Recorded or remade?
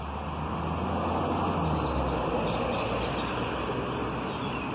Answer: recorded